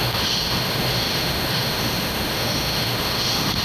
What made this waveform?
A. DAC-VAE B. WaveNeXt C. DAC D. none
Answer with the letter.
A